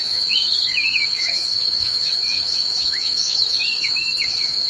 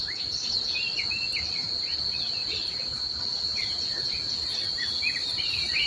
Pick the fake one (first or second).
first